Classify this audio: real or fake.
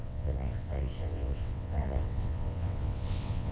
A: fake